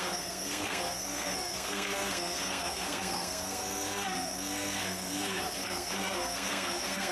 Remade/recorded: remade